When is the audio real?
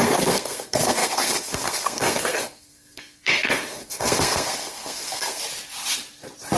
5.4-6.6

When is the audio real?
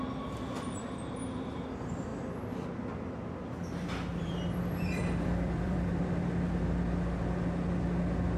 0.0-4.1; 5.9-8.4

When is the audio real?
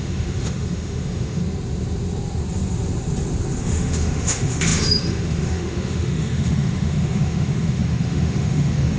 1.4-3.6